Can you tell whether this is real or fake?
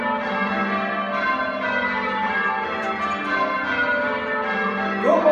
real